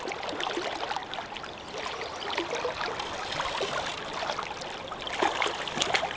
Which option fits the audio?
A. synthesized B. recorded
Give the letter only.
B